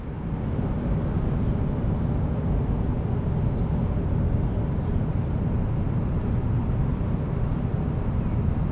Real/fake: real